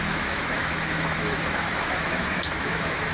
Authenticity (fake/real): fake